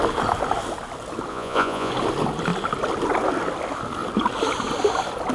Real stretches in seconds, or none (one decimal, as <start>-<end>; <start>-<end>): 0.0-1.3; 1.9-5.3